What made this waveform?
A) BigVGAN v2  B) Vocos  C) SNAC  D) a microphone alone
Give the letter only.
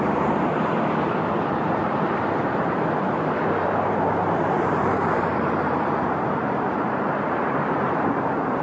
A